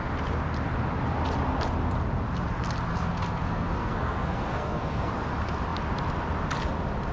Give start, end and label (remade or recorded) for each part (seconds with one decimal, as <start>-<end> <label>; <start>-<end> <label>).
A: 0.0-2.9 recorded; 2.9-5.1 remade; 5.1-7.1 recorded